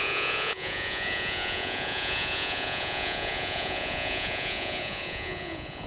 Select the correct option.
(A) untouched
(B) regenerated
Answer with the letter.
B